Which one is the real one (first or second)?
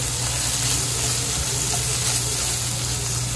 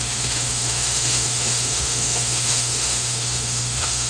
first